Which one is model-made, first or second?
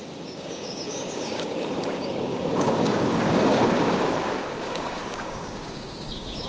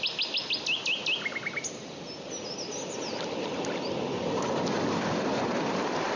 first